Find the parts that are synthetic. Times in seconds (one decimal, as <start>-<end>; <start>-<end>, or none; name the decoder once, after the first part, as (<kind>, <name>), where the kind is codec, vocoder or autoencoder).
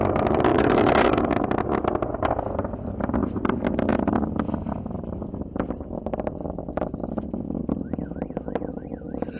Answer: 0.5-1.2 (autoencoder, DAC-VAE)